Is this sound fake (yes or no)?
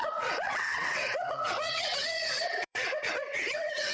yes